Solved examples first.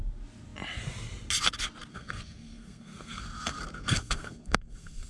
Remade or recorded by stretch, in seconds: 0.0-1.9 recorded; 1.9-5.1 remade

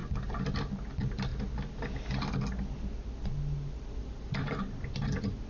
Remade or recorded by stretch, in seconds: 0.0-5.5 recorded